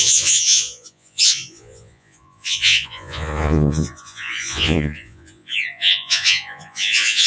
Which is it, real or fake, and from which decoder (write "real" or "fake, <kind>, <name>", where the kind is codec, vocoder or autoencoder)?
fake, vocoder, Vocos